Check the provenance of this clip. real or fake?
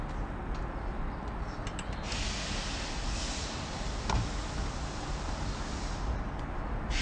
real